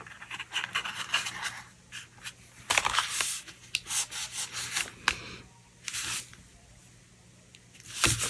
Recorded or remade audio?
recorded